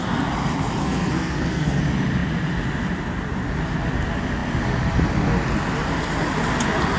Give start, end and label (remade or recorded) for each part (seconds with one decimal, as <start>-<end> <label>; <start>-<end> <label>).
0.0-0.8 recorded; 0.8-1.8 remade; 1.8-7.0 recorded